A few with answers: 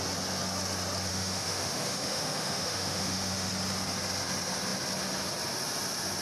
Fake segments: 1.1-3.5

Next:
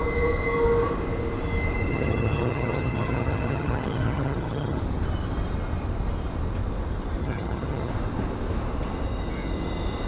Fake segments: 1.9-4.8; 7.2-7.9